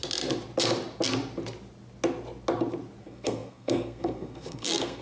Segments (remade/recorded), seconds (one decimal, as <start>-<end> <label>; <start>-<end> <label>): 0.0-3.0 recorded; 3.0-5.0 remade